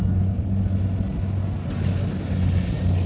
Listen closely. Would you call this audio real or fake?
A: real